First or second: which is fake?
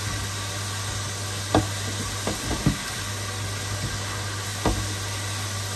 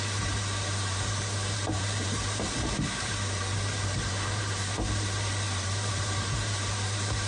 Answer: second